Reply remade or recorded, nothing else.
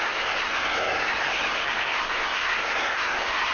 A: remade